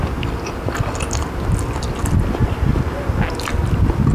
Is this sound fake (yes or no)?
no